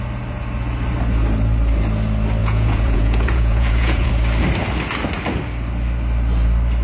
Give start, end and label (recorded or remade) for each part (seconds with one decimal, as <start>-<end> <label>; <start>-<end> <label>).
0.0-2.4 recorded; 2.4-4.1 remade; 4.1-6.8 recorded